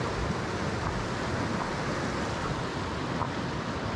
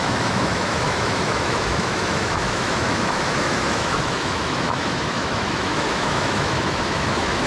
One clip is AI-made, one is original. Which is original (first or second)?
first